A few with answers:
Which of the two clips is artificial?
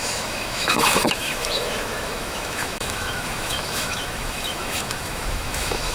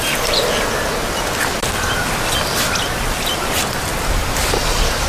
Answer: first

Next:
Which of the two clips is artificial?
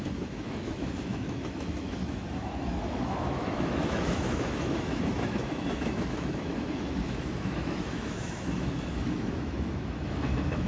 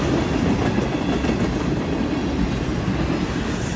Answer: first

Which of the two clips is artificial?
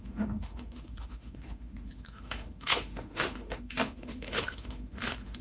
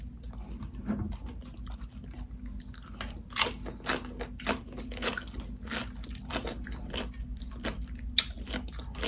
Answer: first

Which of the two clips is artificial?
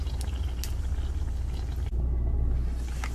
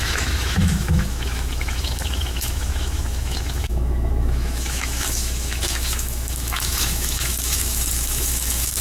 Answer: second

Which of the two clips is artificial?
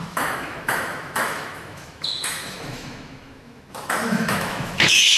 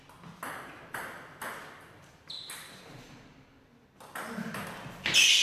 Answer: first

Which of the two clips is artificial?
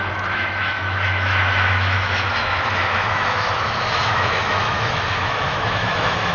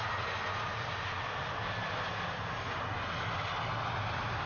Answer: first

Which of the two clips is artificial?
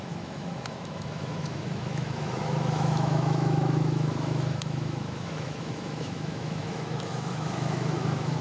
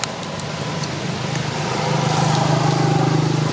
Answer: first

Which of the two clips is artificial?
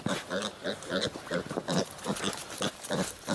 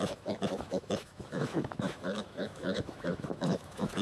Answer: second